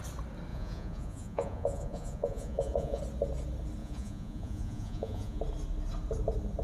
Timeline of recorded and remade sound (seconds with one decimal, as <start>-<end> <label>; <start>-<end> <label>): 0.0-0.5 recorded; 0.5-3.0 remade; 3.0-3.8 recorded; 3.8-5.4 remade; 5.4-6.6 recorded